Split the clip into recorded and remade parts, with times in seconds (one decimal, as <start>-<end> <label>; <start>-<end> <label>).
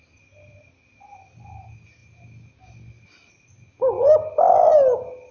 0.0-5.3 recorded